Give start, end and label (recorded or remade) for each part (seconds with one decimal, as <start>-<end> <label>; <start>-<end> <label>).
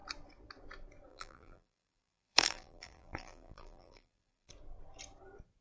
0.0-1.1 recorded; 1.1-4.5 remade; 4.5-5.6 recorded